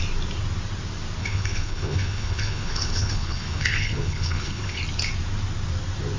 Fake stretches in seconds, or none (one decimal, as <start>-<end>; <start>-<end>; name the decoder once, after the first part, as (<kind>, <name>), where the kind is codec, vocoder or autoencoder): 1.2-4.8 (codec, HILCodec)